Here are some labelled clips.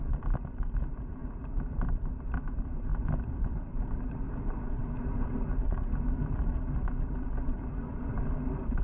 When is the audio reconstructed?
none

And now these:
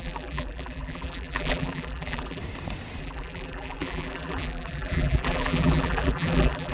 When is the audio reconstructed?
0.0-2.4 (vocoder, BigVGAN v2); 3.0-6.7

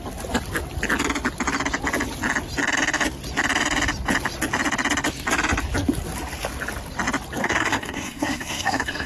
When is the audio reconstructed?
7.4-9.1 (codec, SNAC)

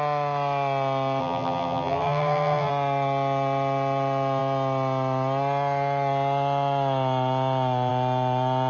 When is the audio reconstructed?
1.2-2.7 (vocoder, BigVGAN v2)

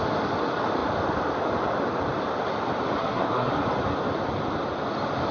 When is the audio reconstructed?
3.0-3.5 (codec, SNAC)